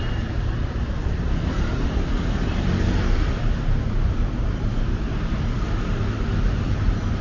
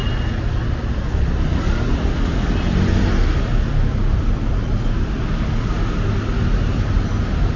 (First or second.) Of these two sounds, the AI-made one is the first